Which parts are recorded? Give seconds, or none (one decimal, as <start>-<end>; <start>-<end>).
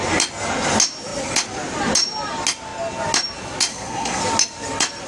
0.0-3.7; 4.2-5.1